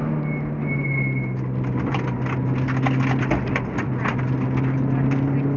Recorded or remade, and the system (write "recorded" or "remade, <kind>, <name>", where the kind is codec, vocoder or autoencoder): recorded